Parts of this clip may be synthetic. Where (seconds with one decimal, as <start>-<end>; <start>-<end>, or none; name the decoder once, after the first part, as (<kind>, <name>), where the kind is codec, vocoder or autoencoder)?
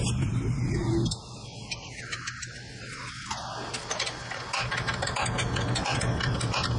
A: none